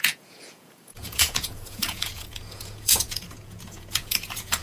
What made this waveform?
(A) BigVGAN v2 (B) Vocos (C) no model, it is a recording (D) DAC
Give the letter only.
B